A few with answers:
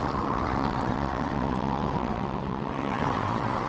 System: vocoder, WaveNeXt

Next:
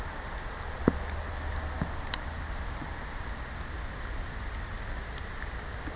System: none